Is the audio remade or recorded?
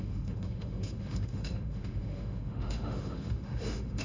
remade